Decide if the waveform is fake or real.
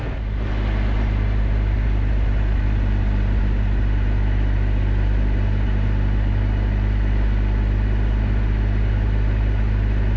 real